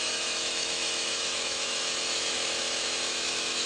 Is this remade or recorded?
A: remade